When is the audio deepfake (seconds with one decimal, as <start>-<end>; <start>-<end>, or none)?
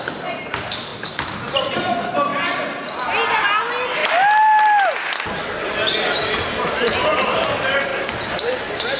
0.0-2.3; 3.6-4.0; 7.1-9.0